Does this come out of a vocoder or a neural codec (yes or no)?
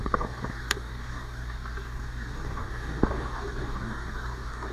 yes